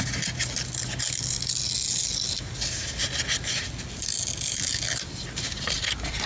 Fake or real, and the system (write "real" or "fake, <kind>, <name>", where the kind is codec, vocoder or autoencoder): real